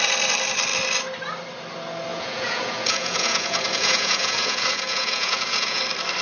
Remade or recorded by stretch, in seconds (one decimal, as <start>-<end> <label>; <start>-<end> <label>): 0.0-2.1 recorded; 2.1-5.8 remade; 5.8-6.2 recorded